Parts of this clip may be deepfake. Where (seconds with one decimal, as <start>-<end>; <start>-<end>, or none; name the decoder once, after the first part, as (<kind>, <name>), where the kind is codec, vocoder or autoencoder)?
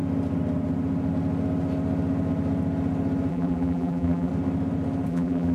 3.3-4.3 (vocoder, BigVGAN v2); 5.1-5.5